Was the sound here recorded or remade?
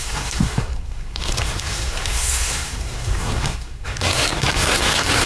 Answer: remade